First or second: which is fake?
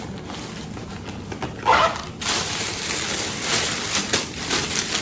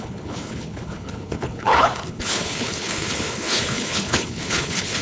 second